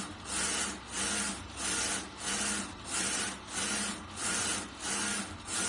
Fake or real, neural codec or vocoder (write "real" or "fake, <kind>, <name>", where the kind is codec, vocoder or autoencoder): real